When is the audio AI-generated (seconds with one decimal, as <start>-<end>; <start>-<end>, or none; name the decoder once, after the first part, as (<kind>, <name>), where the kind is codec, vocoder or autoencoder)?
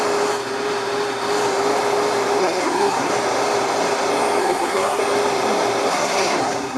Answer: 2.4-3.1 (codec, SNAC); 4.4-5.0; 5.9-6.8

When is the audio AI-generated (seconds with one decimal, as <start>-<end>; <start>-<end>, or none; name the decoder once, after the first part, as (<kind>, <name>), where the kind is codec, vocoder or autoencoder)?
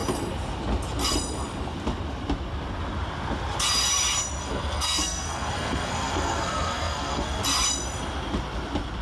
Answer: 4.4-7.4 (codec, SNAC)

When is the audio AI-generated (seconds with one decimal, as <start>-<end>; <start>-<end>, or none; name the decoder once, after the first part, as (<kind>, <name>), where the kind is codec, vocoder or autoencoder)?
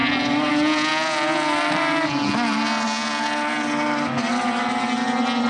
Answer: none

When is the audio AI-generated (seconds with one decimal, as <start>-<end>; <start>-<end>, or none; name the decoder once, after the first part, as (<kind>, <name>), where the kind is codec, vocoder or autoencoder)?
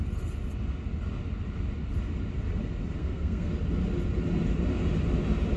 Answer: 3.0-3.5 (codec, SNAC)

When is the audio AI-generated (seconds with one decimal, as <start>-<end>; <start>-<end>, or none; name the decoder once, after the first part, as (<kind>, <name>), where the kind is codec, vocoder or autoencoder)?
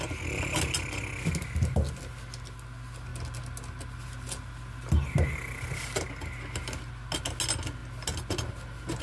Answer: none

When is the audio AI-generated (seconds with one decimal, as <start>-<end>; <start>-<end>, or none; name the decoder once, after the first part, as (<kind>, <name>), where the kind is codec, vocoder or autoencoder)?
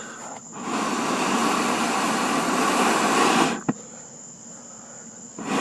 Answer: none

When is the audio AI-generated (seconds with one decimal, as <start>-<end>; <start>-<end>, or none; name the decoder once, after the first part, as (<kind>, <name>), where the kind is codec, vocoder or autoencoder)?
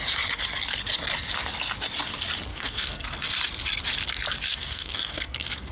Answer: 2.5-3.3 (codec, SNAC); 4.5-5.7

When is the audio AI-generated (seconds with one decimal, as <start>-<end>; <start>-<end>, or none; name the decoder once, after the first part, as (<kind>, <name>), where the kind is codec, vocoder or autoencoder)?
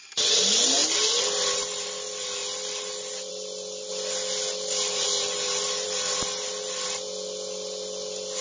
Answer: none